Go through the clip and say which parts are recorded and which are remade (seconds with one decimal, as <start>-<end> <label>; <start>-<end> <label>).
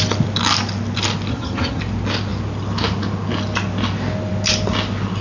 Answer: 0.0-1.3 recorded; 1.3-1.8 remade; 1.8-5.2 recorded